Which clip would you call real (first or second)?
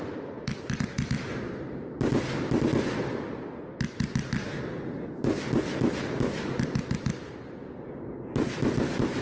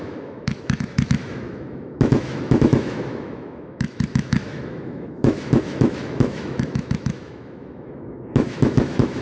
first